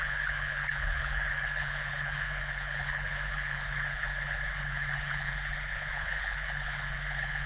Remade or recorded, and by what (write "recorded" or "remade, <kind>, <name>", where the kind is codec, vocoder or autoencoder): remade, codec, HILCodec